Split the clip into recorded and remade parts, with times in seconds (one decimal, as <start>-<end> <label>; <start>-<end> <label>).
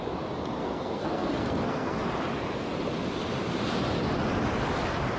0.0-0.6 recorded; 0.6-2.0 remade; 2.0-5.2 recorded